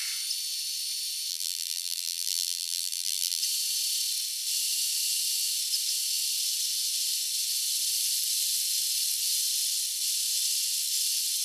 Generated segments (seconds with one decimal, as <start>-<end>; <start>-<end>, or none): 1.3-3.4